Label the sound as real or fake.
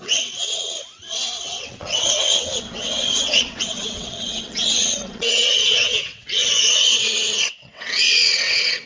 fake